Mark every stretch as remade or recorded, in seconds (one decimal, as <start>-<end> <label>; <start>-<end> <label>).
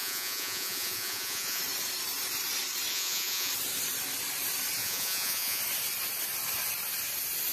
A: 0.0-1.6 remade; 1.6-2.9 recorded; 2.9-3.5 remade; 3.5-4.8 recorded; 4.8-5.6 remade; 5.6-7.5 recorded